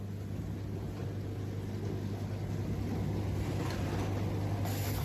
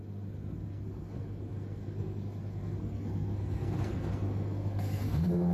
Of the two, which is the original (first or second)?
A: first